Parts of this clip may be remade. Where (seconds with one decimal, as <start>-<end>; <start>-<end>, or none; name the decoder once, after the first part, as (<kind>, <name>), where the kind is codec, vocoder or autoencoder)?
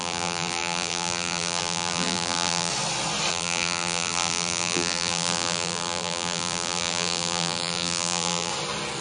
0.0-2.7 (vocoder, BigVGAN v2); 3.3-8.5